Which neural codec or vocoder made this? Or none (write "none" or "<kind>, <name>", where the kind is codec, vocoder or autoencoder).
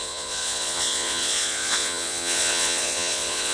vocoder, Vocos